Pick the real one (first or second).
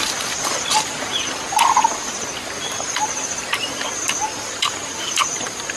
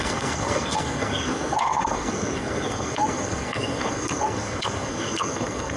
first